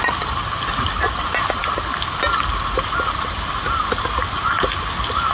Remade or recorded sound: recorded